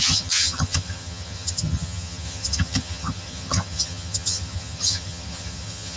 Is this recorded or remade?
remade